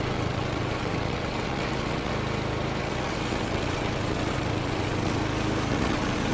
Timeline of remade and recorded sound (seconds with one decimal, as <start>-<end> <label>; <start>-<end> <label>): 0.0-2.1 remade; 2.1-2.8 recorded; 2.8-5.2 remade; 5.2-5.7 recorded; 5.7-6.3 remade